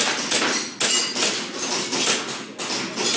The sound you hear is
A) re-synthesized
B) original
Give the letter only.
B